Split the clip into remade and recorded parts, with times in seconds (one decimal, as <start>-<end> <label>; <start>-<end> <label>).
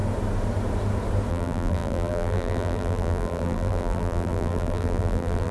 0.0-1.3 recorded; 1.3-5.5 remade